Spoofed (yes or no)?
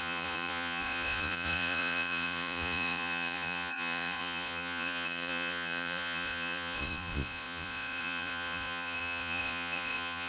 yes